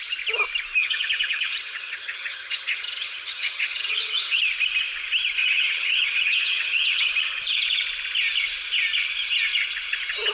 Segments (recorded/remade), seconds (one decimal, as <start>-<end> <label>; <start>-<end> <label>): 0.0-0.8 recorded; 0.8-4.4 remade; 4.4-5.4 recorded; 5.4-7.1 remade; 7.1-10.3 recorded